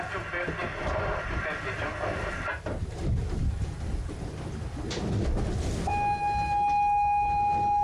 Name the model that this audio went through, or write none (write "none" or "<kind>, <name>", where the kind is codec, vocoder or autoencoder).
none